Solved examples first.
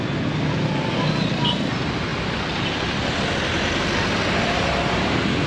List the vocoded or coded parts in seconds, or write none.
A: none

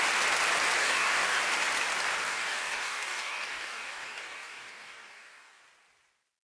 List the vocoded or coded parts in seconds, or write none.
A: 0.8-1.4 (codec, DAC); 2.2-5.6

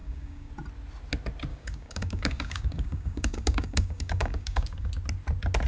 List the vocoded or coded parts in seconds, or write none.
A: 0.0-0.5 (codec, DAC); 1.5-4.9

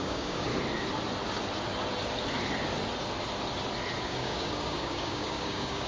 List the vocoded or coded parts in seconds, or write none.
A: 0.0-0.5 (codec, DAC); 4.0-5.9